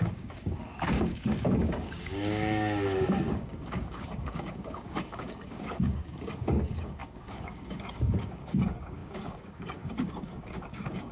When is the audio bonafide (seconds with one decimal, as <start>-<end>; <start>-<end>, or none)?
none